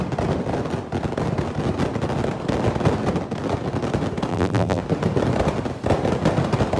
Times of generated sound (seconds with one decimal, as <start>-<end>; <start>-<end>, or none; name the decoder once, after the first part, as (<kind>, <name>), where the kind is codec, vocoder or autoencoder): 4.3-4.8 (vocoder, BigVGAN v2)